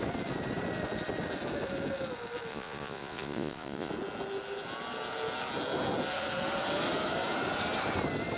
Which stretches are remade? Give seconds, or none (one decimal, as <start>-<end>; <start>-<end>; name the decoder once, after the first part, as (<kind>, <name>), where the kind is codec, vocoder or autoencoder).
2.5-3.9 (vocoder, Vocos)